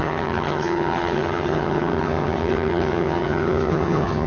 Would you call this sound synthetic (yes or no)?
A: yes